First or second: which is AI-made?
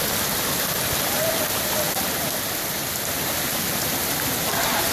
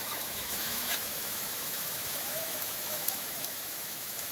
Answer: second